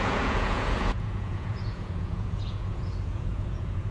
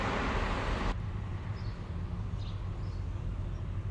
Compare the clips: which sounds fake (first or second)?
first